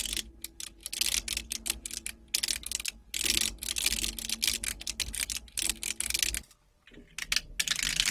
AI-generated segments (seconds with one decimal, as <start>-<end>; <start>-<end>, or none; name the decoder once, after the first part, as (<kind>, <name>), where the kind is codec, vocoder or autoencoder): none